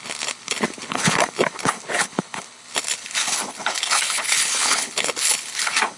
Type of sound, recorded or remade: remade